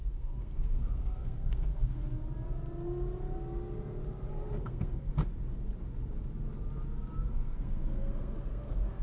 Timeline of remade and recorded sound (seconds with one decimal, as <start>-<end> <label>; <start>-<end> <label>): 0.0-2.0 remade; 2.0-4.3 recorded; 4.3-5.1 remade; 5.1-7.3 recorded; 7.3-9.0 remade